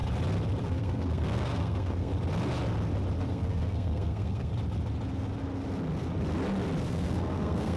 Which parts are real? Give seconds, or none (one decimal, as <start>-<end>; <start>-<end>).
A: 0.0-0.6; 2.1-3.3; 4.5-6.9

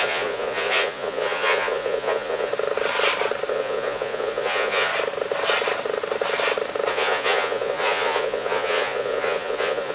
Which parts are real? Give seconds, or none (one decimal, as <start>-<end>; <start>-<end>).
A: 2.5-3.5; 4.9-6.9